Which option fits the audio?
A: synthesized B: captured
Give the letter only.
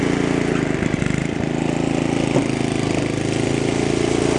B